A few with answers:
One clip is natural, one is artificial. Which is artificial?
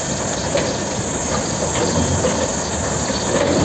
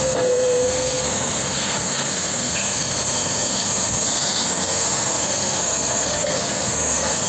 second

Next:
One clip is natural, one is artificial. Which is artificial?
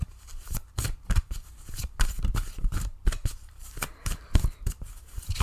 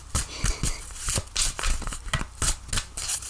first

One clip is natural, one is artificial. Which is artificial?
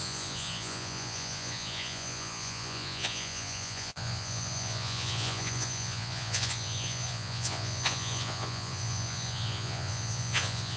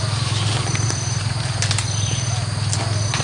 first